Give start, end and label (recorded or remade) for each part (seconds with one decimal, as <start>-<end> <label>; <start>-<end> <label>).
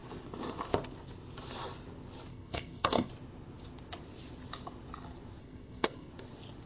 0.0-2.3 recorded; 2.3-3.1 remade; 3.1-5.4 recorded; 5.4-6.1 remade; 6.1-6.7 recorded